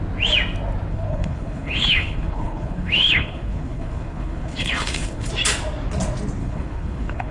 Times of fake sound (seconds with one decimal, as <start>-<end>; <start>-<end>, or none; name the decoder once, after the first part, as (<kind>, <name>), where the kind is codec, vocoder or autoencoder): 0.9-5.3 (codec, HILCodec); 6.4-7.3

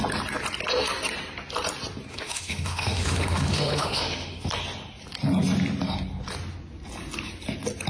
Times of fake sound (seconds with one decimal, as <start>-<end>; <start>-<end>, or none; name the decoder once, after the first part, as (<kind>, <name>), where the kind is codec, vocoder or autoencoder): 2.1-4.5 (autoencoder, DAC-VAE)

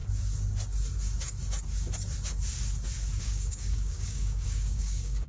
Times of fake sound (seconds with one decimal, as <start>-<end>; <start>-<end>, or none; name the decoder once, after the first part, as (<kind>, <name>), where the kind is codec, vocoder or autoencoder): 3.2-5.3 (codec, DAC)